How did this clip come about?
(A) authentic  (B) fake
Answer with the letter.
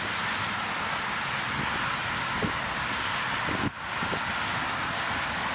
A